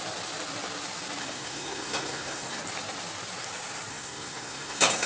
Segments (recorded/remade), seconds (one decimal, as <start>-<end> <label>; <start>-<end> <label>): 0.0-1.2 recorded; 1.2-2.6 remade; 2.6-3.9 recorded; 3.9-5.1 remade